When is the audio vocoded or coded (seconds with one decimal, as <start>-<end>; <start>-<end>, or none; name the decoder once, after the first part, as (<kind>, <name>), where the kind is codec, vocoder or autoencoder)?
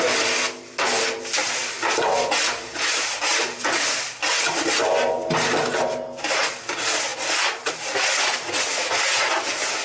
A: none